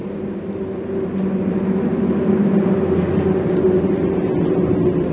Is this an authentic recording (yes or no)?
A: yes